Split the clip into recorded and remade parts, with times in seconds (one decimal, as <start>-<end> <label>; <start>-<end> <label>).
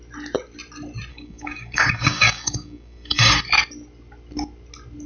0.0-1.1 recorded; 1.1-3.3 remade; 3.3-5.1 recorded